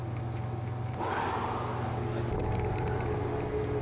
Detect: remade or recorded recorded